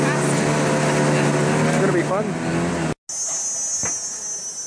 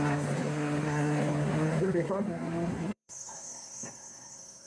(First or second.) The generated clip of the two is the second